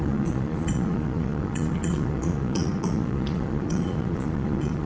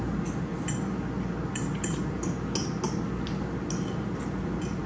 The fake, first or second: first